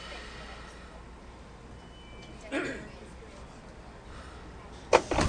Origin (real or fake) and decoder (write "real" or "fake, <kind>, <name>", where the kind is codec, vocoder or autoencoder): real